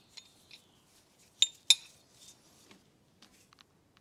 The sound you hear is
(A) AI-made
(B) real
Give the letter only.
B